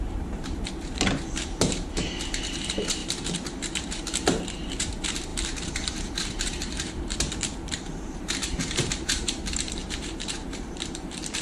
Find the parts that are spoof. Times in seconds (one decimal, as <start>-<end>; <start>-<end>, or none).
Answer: 0.0-11.4